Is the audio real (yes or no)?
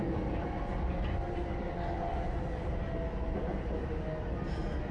yes